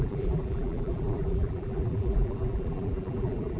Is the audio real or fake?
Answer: fake